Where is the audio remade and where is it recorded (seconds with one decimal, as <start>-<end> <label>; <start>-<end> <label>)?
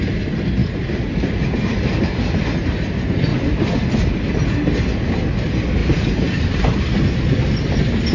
0.0-3.3 recorded; 3.3-4.3 remade; 4.3-5.8 recorded; 5.8-6.8 remade; 6.8-8.1 recorded